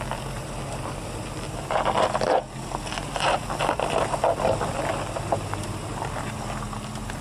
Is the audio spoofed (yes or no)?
no